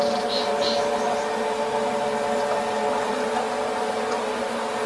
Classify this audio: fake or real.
real